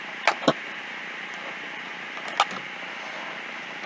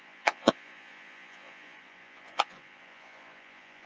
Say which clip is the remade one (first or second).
second